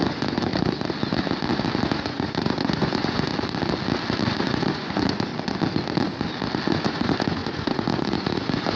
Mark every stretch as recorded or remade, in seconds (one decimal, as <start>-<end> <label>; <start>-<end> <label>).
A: 0.0-0.5 remade; 0.5-1.8 recorded; 1.8-3.3 remade; 3.3-4.4 recorded; 4.4-5.3 remade; 5.3-6.7 recorded; 6.7-8.8 remade